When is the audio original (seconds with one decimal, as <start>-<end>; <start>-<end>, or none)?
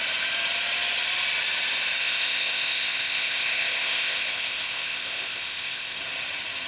0.0-2.0; 6.0-6.7